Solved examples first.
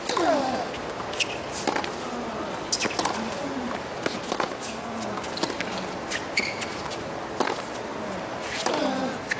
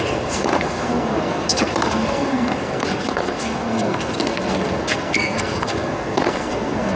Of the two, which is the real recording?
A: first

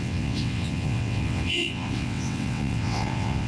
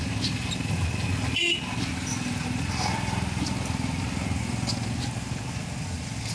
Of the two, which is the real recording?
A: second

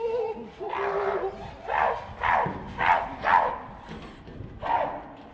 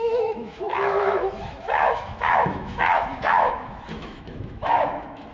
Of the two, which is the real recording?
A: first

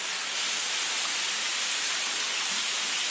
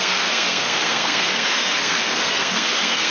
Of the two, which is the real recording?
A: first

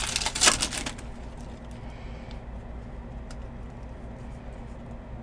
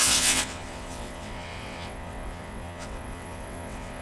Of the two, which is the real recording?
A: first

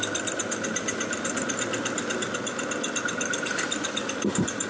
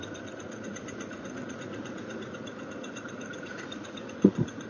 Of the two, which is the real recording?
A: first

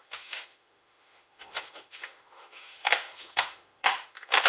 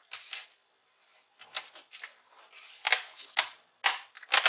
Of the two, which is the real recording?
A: second